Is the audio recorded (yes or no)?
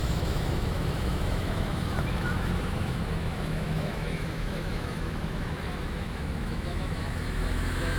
no